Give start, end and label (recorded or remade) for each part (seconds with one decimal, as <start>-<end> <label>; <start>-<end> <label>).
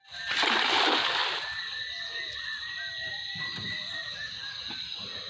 0.0-5.3 recorded